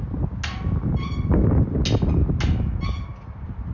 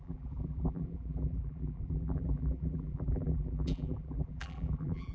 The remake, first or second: second